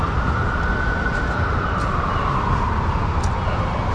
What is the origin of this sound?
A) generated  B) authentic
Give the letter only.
B